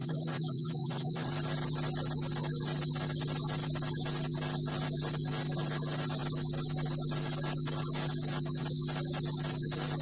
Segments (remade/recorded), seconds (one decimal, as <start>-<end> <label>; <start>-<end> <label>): 0.0-1.3 remade; 1.3-10.0 recorded